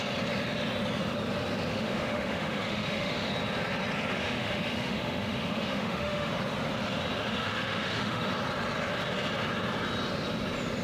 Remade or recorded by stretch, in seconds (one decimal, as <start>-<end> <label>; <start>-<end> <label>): 0.0-1.7 recorded; 1.7-3.3 remade; 3.3-4.1 recorded; 4.1-6.3 remade; 6.3-7.3 recorded; 7.3-8.3 remade; 8.3-10.8 recorded